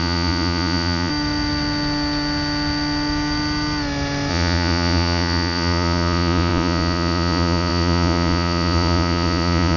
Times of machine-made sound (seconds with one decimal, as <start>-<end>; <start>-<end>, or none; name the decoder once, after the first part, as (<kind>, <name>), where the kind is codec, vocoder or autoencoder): 0.0-1.1 (vocoder, Vocos); 4.3-9.8